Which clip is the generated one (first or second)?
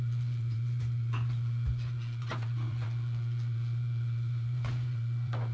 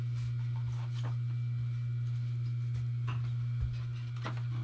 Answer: first